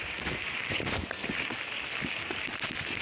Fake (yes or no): no